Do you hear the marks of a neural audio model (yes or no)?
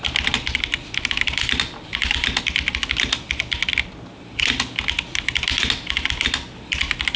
no